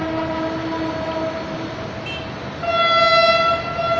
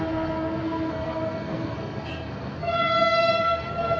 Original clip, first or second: first